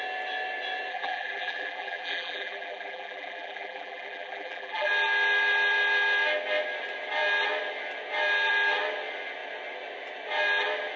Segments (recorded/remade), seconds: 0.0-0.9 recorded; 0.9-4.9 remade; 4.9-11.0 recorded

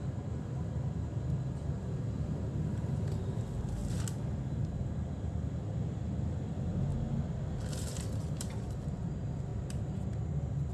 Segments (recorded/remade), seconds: 0.0-3.8 remade; 3.8-4.8 recorded; 4.8-6.9 remade; 6.9-8.3 recorded; 8.3-10.7 remade